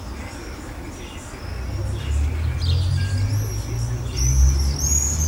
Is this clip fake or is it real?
real